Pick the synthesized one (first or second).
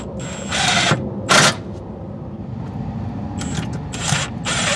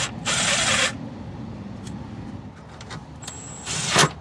second